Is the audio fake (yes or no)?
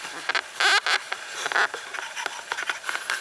no